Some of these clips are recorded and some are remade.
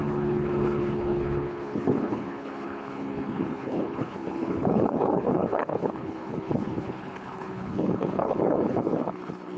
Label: remade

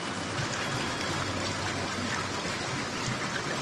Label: recorded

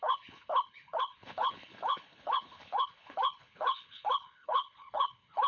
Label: remade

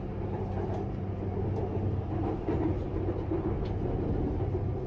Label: recorded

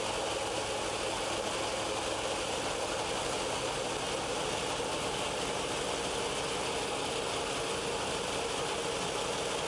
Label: recorded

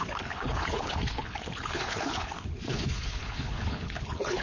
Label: remade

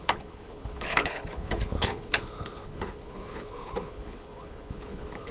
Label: remade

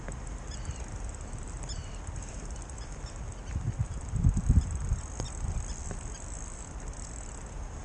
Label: recorded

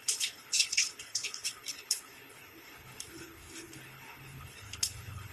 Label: remade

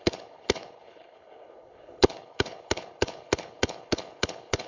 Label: remade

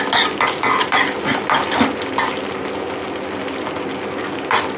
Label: recorded